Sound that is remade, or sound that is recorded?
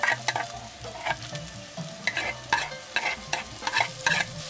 recorded